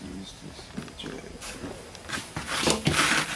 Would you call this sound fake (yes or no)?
no